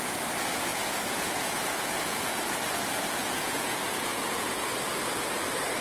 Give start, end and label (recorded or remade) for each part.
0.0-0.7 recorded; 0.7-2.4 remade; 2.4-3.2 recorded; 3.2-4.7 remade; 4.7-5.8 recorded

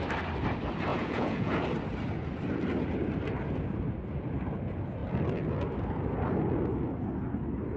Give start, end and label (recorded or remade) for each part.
0.0-0.9 recorded; 0.9-1.6 remade; 1.6-7.8 recorded

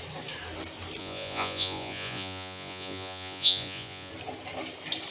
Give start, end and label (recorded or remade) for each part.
0.0-1.0 recorded; 1.0-4.1 remade; 4.1-5.1 recorded

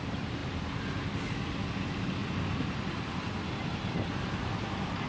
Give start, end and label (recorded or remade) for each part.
0.0-5.1 recorded

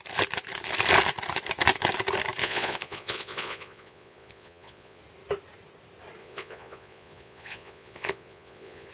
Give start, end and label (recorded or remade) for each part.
0.0-2.4 recorded; 2.4-5.0 remade; 5.0-6.2 recorded; 6.2-8.9 remade

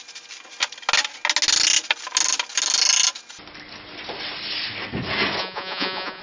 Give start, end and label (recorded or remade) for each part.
0.0-5.4 recorded; 5.4-6.2 remade

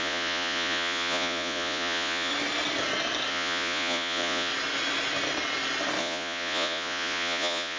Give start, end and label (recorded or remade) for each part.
0.0-2.3 remade; 2.3-3.3 recorded; 3.3-4.5 remade; 4.5-6.0 recorded; 6.0-7.8 remade